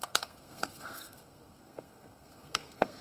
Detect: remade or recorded remade